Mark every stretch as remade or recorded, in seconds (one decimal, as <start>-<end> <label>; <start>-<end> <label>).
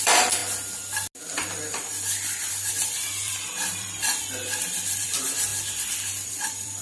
0.0-0.4 remade; 0.4-2.5 recorded; 2.5-4.1 remade; 4.1-4.7 recorded; 4.7-5.5 remade; 5.5-6.1 recorded; 6.1-6.8 remade